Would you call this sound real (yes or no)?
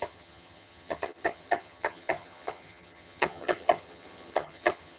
no